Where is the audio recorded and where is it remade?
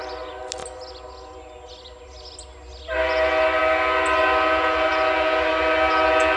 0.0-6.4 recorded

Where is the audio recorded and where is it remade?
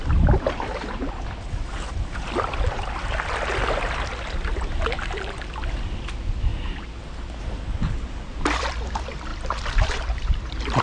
0.0-6.5 remade; 6.5-7.4 recorded; 7.4-10.8 remade